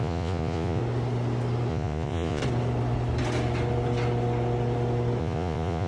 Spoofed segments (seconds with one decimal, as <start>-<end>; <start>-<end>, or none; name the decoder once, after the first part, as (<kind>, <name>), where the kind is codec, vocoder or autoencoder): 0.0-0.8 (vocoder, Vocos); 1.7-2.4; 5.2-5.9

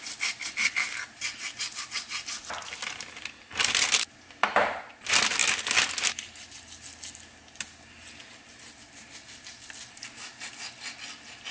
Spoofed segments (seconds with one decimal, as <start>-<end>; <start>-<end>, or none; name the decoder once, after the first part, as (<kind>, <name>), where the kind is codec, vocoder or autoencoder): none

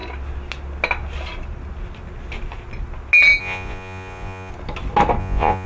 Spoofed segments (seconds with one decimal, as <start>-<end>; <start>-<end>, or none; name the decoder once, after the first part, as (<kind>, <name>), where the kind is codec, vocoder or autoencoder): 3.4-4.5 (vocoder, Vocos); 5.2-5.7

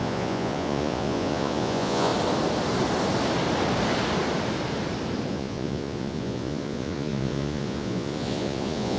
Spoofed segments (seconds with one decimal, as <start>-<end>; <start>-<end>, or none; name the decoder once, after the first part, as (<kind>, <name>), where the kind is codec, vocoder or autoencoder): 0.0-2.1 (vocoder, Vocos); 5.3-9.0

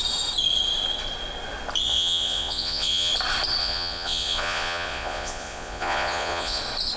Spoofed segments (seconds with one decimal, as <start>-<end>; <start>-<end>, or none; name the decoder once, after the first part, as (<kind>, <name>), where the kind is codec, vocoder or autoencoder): 1.9-3.1 (vocoder, Vocos); 3.6-6.6

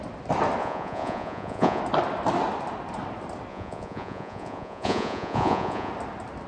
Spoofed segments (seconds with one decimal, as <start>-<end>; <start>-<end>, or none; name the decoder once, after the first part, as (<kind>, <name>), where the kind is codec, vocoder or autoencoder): 0.6-1.8 (vocoder, Vocos); 3.5-5.9

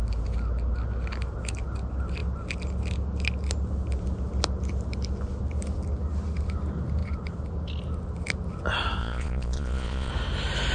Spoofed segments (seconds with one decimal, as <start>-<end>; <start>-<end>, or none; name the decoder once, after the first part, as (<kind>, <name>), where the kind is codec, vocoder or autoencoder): 9.0-10.1 (vocoder, Vocos)